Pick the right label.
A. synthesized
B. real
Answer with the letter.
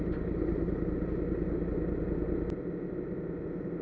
B